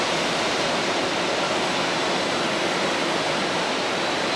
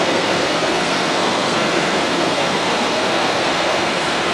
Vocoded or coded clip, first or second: second